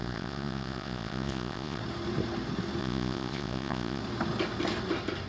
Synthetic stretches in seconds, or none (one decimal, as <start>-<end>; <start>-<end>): 0.0-1.8; 2.8-4.0

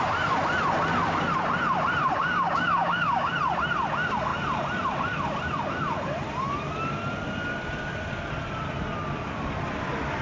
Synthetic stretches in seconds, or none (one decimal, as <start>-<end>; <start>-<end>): 2.2-3.3

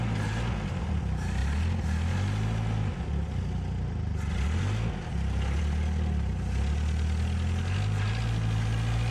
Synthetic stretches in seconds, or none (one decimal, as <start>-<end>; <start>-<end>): none

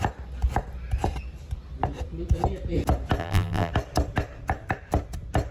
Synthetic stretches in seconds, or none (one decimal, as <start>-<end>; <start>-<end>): 3.2-3.7

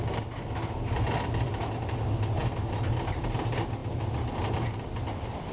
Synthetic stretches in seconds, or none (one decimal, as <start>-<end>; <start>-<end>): none

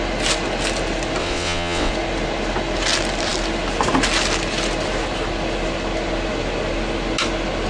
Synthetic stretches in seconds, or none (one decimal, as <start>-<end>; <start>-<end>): 1.2-1.9